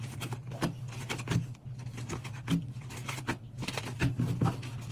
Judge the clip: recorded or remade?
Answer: recorded